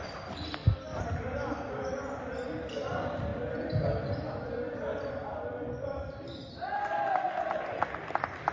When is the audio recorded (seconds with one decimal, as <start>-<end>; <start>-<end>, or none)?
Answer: 0.6-1.1